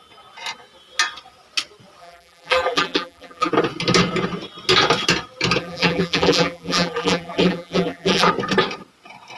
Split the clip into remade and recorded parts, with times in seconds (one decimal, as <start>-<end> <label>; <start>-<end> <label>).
0.0-2.0 recorded; 2.0-3.5 remade; 3.5-5.6 recorded; 5.6-8.3 remade; 8.3-9.4 recorded